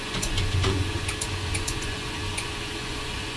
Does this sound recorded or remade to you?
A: remade